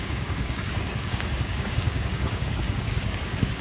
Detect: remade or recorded remade